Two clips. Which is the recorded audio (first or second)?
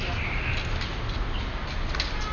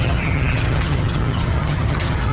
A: first